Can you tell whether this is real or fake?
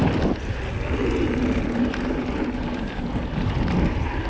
real